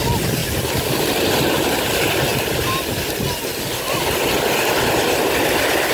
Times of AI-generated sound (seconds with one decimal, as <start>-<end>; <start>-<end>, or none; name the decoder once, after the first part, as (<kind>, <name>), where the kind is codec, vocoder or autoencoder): none